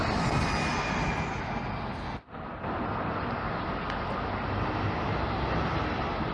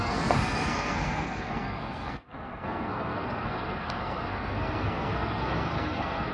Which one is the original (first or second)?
first